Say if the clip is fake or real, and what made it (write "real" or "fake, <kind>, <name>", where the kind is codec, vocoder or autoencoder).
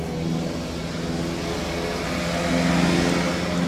real